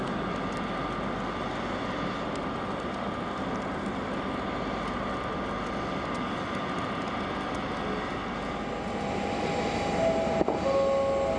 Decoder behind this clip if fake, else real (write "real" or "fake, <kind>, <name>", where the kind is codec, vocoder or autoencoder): real